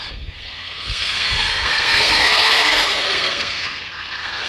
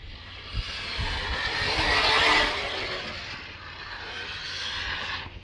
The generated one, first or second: first